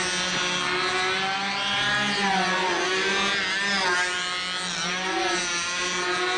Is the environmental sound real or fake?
real